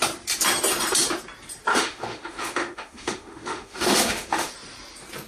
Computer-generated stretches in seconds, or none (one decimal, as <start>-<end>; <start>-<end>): 1.7-4.5